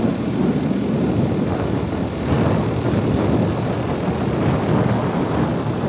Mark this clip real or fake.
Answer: real